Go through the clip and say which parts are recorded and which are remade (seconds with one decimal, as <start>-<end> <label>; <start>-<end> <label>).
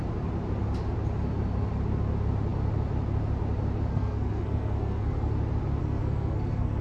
0.0-3.9 recorded; 3.9-5.3 remade; 5.3-5.8 recorded; 5.8-6.8 remade